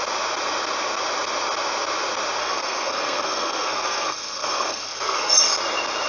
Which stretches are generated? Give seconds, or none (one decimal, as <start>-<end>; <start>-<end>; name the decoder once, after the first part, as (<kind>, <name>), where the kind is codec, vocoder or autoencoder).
2.4-5.3 (codec, SNAC)